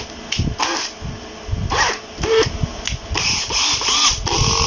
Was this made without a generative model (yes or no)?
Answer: yes